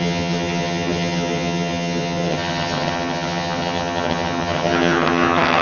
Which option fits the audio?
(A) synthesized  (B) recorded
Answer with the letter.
A